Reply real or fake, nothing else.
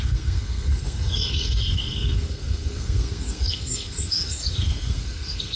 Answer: fake